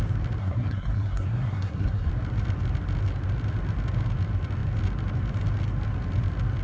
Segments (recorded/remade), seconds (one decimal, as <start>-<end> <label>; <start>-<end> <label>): 0.0-0.4 recorded; 0.4-2.1 remade; 2.1-6.6 recorded